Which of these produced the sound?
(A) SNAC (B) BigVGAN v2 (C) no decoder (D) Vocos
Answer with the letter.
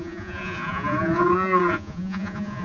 D